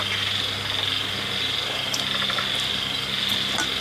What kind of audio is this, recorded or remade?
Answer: recorded